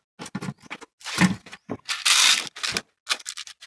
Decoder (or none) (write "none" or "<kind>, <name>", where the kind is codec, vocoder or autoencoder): none